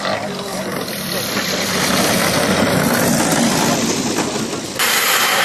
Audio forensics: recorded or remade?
recorded